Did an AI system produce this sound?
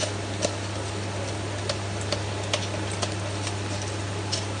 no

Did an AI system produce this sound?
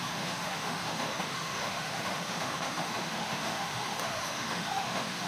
yes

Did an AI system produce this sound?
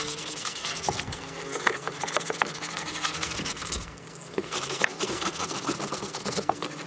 yes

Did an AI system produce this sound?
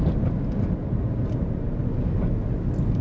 no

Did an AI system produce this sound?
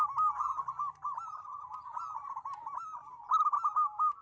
no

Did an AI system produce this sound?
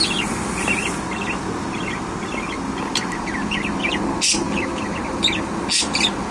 no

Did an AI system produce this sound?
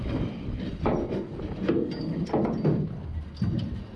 no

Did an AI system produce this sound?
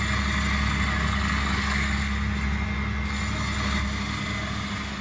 no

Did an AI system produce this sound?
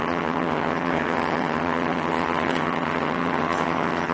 yes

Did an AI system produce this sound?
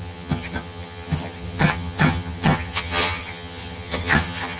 yes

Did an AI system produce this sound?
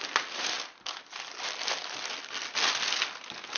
no